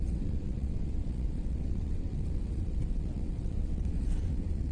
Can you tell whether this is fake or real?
fake